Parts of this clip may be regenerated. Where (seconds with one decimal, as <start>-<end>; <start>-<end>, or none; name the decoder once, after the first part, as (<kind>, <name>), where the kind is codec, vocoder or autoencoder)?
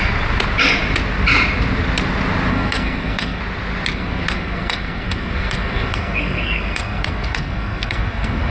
2.5-3.4 (codec, SNAC); 3.9-8.5